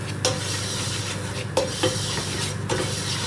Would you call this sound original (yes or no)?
yes